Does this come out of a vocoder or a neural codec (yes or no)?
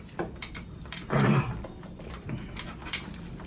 yes